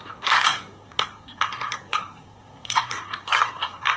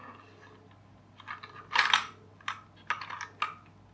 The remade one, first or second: first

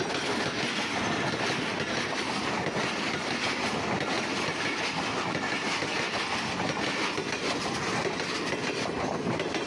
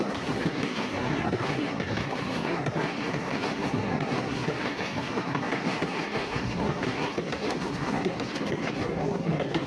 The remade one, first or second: second